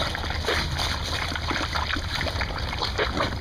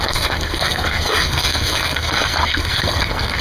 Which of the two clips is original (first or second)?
first